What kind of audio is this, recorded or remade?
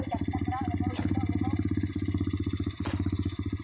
recorded